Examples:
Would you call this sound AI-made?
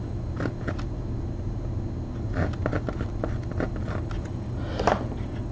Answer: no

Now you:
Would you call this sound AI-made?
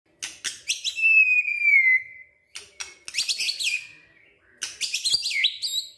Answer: no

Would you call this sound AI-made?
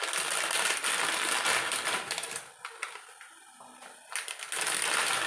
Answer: no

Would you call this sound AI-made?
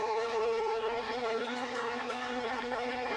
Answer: yes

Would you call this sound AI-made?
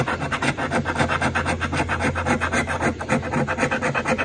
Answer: no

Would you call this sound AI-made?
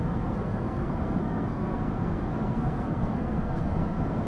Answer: yes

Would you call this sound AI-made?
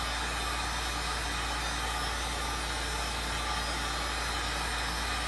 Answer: no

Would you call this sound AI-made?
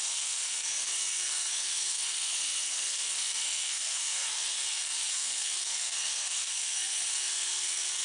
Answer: yes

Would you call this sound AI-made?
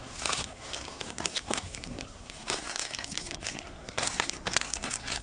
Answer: yes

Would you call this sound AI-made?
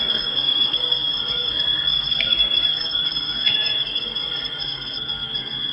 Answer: yes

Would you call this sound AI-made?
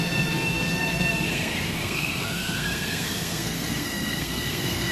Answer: yes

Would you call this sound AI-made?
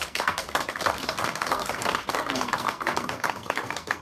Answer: yes